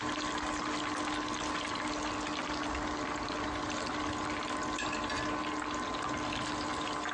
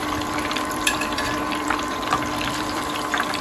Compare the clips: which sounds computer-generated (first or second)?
second